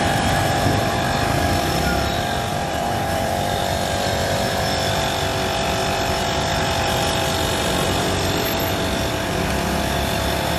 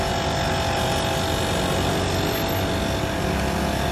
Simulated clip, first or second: first